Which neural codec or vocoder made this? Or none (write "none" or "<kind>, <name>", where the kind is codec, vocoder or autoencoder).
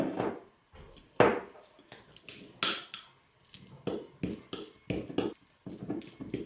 none